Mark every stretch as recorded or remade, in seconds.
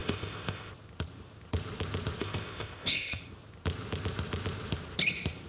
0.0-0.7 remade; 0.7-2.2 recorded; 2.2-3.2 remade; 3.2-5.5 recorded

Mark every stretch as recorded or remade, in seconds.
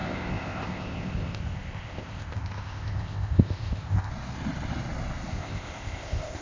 0.0-4.1 remade; 4.1-5.3 recorded; 5.3-6.4 remade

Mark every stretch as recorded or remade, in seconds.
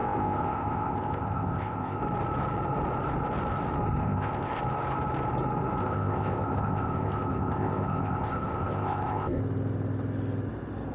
0.0-2.0 remade; 2.0-4.0 recorded; 4.0-4.6 remade; 4.6-5.8 recorded; 5.8-9.4 remade; 9.4-10.9 recorded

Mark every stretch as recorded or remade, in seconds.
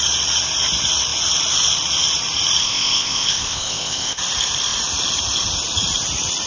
0.0-2.6 recorded; 2.6-4.2 remade; 4.2-6.5 recorded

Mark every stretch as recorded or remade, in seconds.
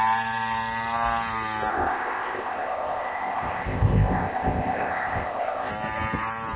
0.0-1.7 recorded; 1.7-5.7 remade; 5.7-6.6 recorded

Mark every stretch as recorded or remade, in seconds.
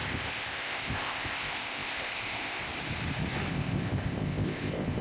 0.0-2.6 remade; 2.6-3.5 recorded; 3.5-5.0 remade